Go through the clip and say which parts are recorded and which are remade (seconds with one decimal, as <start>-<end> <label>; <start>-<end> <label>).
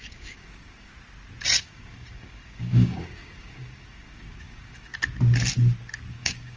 0.0-0.9 remade; 0.9-1.6 recorded; 1.6-4.9 remade; 4.9-6.1 recorded; 6.1-6.6 remade